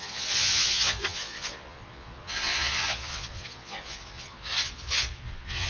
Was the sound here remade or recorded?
remade